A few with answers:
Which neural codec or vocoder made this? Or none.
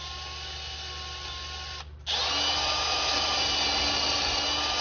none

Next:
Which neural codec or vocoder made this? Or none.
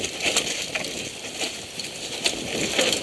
none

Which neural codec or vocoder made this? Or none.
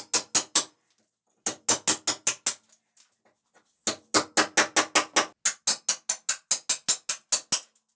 none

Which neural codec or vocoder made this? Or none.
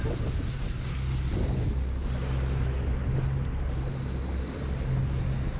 none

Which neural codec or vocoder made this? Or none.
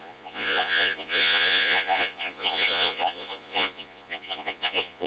vocoder, Vocos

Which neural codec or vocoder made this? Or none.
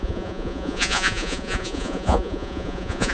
vocoder, Vocos